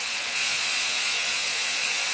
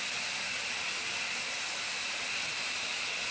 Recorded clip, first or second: second